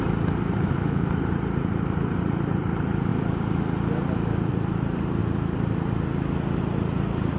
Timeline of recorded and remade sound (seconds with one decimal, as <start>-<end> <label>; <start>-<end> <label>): 0.0-3.1 remade; 3.1-4.5 recorded; 4.5-5.2 remade; 5.2-6.6 recorded; 6.6-7.4 remade